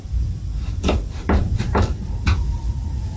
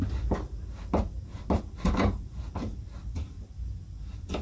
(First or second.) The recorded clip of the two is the second